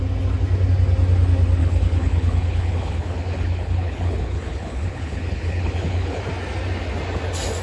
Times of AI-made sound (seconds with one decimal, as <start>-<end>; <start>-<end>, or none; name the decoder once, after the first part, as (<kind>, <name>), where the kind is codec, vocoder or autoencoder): 1.6-6.2 (codec, HILCodec)